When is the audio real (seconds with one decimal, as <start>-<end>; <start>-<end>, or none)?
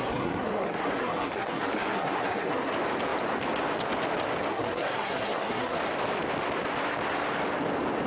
2.7-4.5; 5.8-8.1